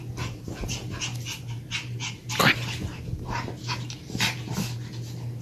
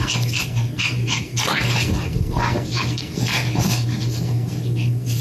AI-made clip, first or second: second